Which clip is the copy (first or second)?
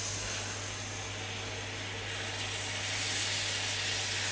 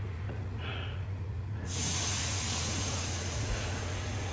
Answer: second